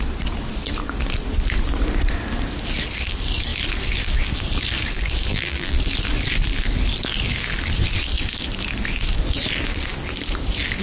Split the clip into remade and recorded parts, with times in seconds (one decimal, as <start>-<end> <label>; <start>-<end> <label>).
0.0-5.3 recorded; 5.3-5.8 remade; 5.8-10.8 recorded